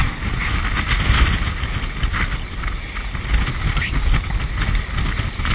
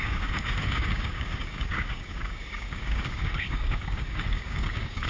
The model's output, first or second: second